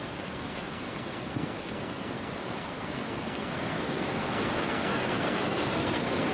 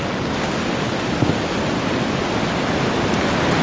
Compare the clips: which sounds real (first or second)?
second